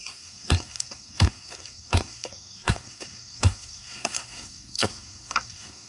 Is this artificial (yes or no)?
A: yes